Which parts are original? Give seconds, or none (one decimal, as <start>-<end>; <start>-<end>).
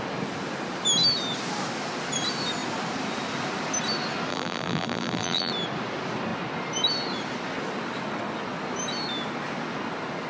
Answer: 0.0-4.3; 5.5-10.3